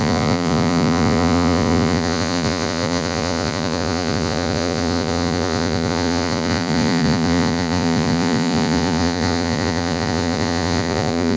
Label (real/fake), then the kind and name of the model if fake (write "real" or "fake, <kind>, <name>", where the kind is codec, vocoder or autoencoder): fake, vocoder, Vocos